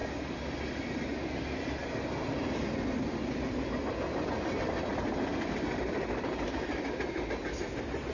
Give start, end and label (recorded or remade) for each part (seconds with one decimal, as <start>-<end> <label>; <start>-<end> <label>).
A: 0.0-8.1 recorded